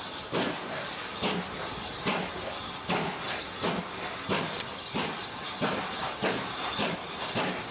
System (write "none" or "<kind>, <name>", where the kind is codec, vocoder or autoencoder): none